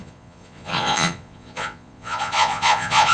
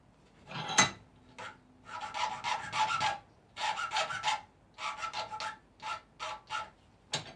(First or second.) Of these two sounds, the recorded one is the second